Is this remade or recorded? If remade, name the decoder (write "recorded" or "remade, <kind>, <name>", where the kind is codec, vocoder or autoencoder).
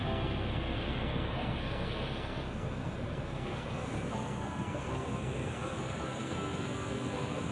remade, codec, SNAC